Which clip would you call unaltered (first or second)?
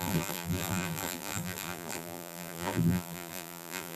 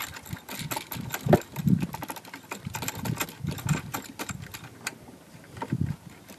second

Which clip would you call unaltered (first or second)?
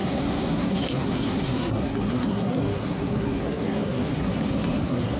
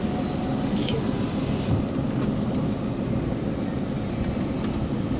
second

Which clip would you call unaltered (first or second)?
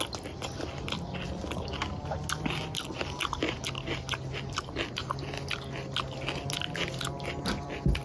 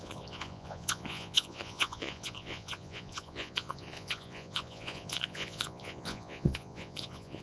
first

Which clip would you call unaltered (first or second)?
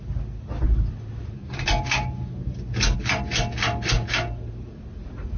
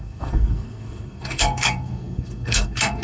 first